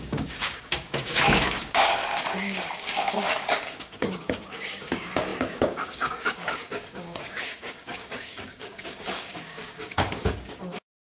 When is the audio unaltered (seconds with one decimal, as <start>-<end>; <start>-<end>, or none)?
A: none